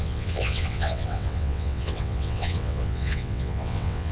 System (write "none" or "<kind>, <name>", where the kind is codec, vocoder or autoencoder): vocoder, WaveNeXt